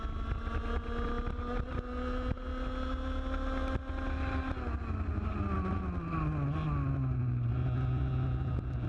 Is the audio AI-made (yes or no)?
no